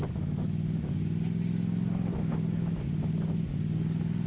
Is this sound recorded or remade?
recorded